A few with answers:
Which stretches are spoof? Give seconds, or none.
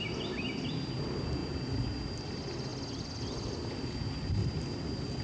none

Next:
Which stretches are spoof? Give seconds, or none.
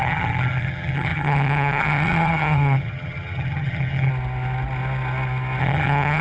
0.0-4.1; 5.6-6.2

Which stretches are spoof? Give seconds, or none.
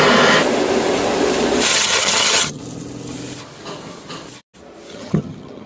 1.7-2.6; 4.9-5.7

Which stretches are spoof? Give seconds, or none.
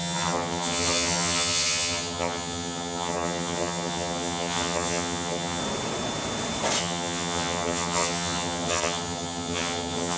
0.0-5.6; 6.8-10.2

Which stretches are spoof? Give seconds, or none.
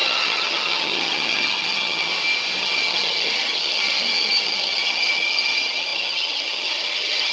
0.0-2.1; 2.6-7.3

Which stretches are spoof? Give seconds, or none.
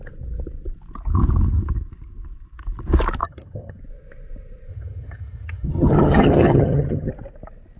3.2-3.8; 4.7-7.1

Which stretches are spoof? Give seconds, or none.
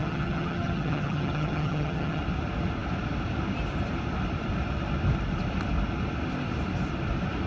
0.0-2.2